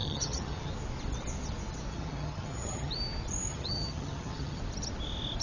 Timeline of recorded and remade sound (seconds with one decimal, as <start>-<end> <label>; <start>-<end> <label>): 0.0-0.7 remade; 0.7-1.9 recorded; 1.9-2.9 remade; 2.9-3.5 recorded; 3.5-4.6 remade; 4.6-5.4 recorded